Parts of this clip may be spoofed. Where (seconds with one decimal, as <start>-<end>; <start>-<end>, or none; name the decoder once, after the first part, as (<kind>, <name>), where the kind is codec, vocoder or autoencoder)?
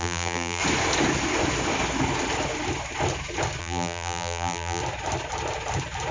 0.0-0.6 (vocoder, BigVGAN v2); 3.6-4.8